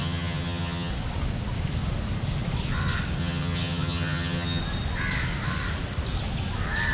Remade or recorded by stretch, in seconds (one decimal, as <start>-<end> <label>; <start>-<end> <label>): 0.0-0.9 remade; 0.9-3.2 recorded; 3.2-4.6 remade; 4.6-6.9 recorded